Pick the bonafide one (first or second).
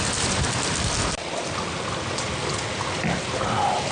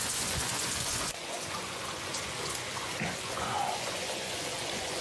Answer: first